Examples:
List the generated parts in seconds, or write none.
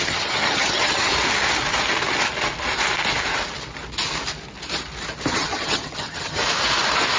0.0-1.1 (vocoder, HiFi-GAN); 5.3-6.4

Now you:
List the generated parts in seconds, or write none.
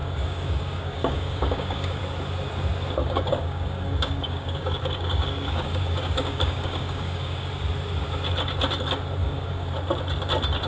0.0-2.0 (codec, DAC); 3.0-7.5; 9.2-9.7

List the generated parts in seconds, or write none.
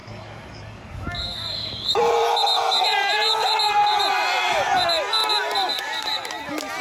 0.0-2.0 (codec, DAC)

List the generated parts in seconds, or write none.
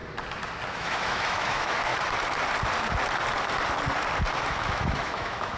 0.7-1.9 (autoencoder, DAC-VAE); 4.4-5.6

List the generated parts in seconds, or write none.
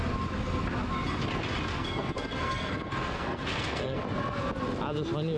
1.7-4.0 (codec, SNAC)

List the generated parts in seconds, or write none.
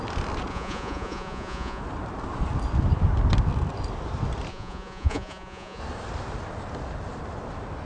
0.5-1.8 (vocoder, Vocos); 4.5-5.8